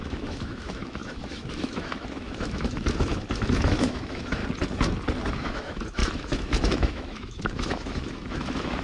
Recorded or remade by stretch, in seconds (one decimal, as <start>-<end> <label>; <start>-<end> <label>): 0.0-4.4 remade; 4.4-5.3 recorded; 5.3-8.8 remade